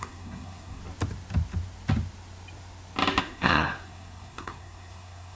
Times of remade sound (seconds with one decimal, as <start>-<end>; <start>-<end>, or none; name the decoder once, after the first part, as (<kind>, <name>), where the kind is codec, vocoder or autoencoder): 0.0-0.8 (codec, SNAC); 3.2-5.4